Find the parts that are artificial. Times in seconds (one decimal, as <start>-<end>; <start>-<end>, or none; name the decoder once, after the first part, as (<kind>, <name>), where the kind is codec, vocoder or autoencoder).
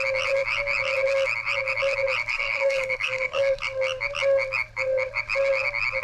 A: 2.3-3.6 (codec, SNAC)